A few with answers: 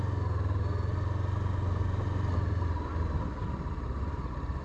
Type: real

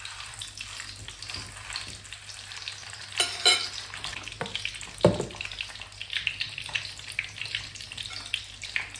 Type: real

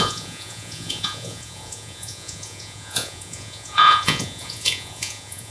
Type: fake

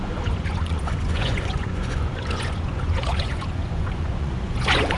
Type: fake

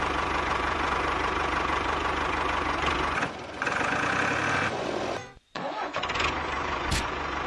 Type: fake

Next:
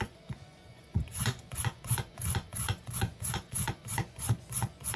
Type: fake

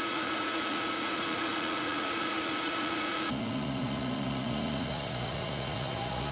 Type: fake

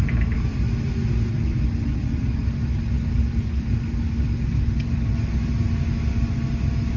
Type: real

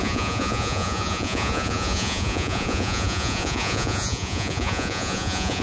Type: fake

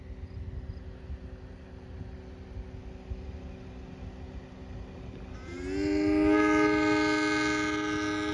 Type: real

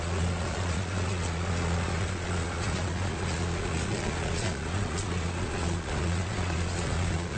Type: fake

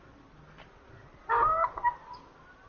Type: real